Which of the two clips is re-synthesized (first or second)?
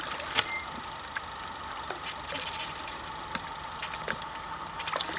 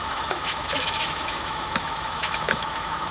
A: second